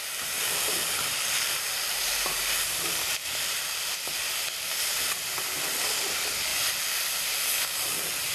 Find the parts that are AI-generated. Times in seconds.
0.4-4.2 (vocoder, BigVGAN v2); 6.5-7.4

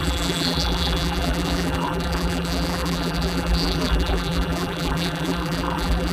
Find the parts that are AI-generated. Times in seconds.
0.0-6.1 (vocoder, BigVGAN v2)

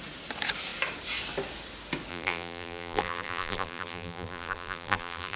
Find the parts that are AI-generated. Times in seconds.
2.1-5.4 (vocoder, BigVGAN v2)